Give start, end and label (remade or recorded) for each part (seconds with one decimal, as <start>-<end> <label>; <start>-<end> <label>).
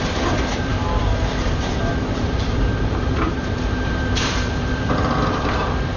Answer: 0.0-6.0 remade